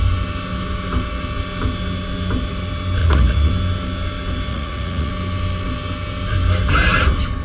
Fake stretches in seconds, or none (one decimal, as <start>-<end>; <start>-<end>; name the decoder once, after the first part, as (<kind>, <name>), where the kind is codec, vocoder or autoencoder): 3.0-3.5 (vocoder, Vocos); 4.5-5.1